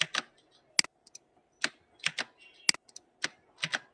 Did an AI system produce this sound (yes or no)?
no